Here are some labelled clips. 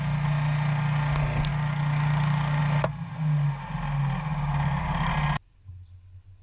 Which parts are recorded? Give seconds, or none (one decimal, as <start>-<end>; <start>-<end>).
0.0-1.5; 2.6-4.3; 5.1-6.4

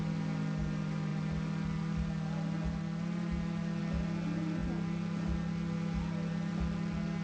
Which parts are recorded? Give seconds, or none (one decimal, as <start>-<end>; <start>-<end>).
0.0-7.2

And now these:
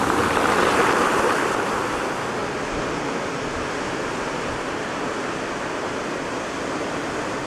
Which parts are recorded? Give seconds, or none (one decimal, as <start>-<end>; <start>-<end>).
0.0-7.5